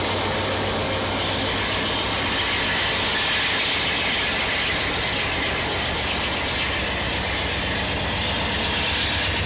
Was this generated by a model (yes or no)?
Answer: no